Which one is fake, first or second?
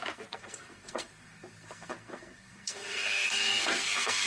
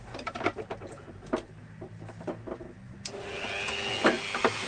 first